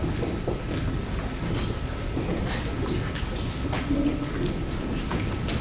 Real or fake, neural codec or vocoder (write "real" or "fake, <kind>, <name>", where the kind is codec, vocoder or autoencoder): real